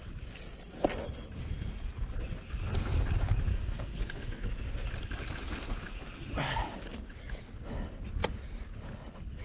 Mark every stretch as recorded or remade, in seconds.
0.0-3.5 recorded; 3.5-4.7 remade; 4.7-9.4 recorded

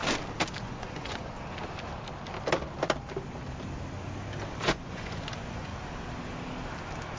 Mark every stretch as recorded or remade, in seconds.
0.0-0.6 recorded; 0.6-1.3 remade; 1.3-4.6 recorded; 4.6-5.7 remade; 5.7-7.2 recorded